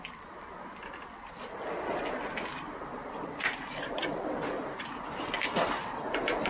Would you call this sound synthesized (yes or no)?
no